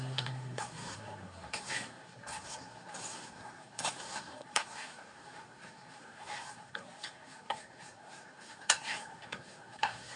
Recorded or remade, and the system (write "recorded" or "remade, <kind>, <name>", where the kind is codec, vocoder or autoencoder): remade, codec, SNAC